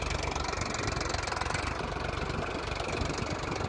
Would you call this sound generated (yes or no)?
no